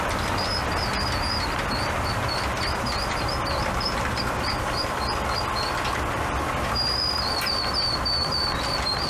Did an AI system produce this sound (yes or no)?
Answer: no